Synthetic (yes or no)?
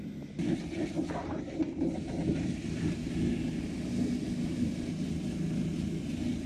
no